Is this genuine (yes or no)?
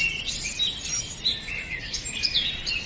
yes